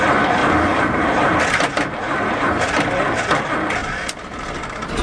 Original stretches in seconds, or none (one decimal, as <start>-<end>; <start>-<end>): 0.0-5.0